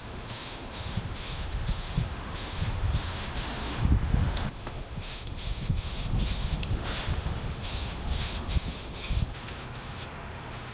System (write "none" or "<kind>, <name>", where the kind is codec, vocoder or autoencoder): autoencoder, DAC-VAE